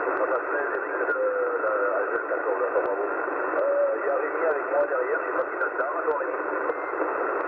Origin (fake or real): real